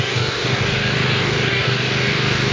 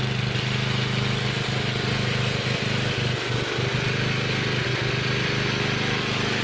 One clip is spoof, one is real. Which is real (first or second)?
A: second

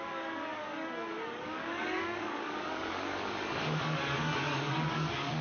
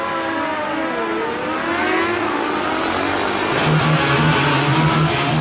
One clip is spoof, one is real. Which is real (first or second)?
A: second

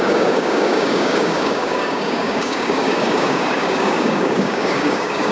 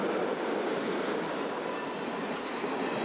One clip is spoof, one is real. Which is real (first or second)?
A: second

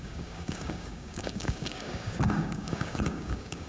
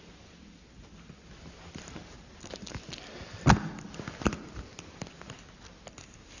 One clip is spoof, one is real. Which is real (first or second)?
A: second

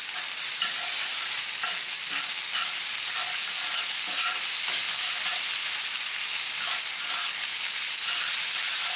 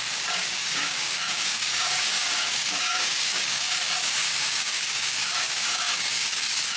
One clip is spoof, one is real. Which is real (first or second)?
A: first